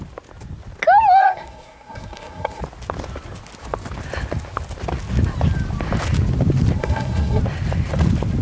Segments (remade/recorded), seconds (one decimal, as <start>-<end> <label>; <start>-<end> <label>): 0.0-1.2 recorded; 1.2-2.6 remade; 2.6-6.8 recorded; 6.8-7.4 remade; 7.4-8.4 recorded